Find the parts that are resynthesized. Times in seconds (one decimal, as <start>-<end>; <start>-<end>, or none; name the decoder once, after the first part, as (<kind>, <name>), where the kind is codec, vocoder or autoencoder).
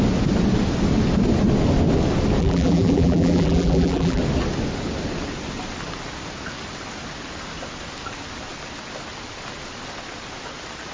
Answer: 2.4-4.2 (vocoder, BigVGAN v2)